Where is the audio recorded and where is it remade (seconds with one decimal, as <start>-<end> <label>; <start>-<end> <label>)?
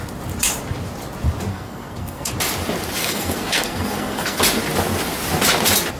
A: 0.0-1.5 recorded; 1.5-2.3 remade; 2.3-3.0 recorded; 3.0-4.4 remade; 4.4-6.0 recorded